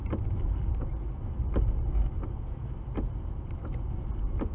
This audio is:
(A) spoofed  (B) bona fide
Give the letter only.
B